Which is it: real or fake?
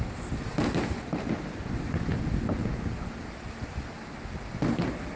real